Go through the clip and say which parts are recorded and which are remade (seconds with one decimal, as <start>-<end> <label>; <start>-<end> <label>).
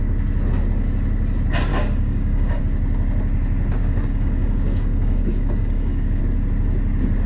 0.0-1.7 recorded; 1.7-2.6 remade; 2.6-3.8 recorded; 3.8-6.2 remade; 6.2-7.3 recorded